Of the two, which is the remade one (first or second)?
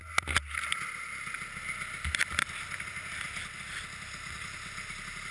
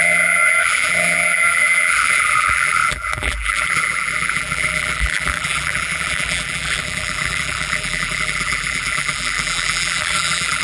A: second